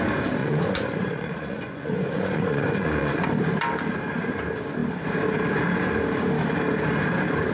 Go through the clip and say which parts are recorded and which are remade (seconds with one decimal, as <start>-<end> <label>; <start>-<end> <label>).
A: 0.0-0.4 recorded; 0.4-3.2 remade; 3.2-7.5 recorded